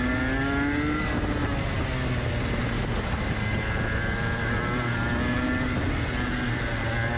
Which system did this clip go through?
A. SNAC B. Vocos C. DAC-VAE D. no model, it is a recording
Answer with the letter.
D